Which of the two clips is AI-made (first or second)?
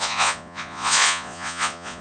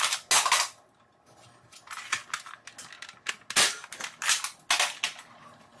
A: first